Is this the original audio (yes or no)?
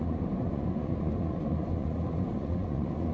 no